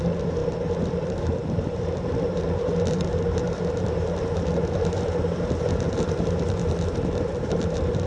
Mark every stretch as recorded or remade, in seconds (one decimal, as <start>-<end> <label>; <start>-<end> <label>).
0.0-8.1 remade